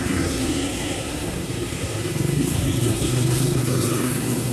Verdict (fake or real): fake